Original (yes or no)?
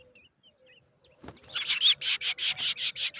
yes